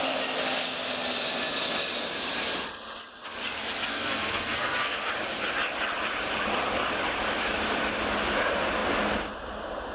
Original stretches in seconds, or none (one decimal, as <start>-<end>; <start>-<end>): 0.0-3.9; 5.1-9.9